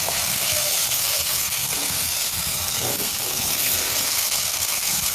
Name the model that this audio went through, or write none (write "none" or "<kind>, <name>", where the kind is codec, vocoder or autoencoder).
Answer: codec, SNAC